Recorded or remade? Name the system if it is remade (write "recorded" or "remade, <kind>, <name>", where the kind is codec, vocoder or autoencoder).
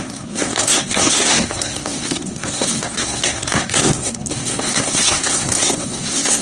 remade, codec, SNAC